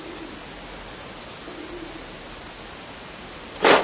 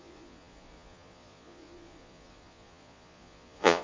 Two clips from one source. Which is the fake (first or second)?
second